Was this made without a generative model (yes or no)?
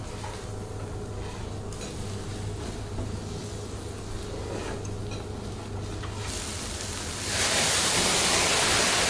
yes